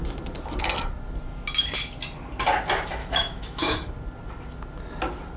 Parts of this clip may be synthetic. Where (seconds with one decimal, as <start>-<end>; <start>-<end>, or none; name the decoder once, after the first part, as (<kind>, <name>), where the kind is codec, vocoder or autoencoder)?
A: 3.0-3.9 (autoencoder, DAC-VAE)